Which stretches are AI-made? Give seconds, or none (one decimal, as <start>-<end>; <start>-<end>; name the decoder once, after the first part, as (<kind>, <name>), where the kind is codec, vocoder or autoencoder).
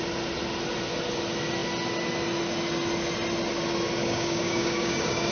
4.0-5.3 (codec, DAC)